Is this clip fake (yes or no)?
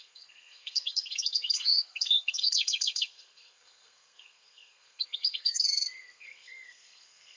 yes